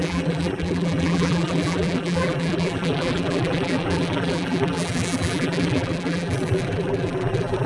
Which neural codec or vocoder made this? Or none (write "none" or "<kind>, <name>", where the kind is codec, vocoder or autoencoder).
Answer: vocoder, BigVGAN v2